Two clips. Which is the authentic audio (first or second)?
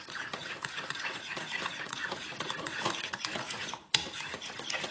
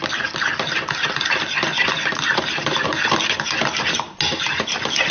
second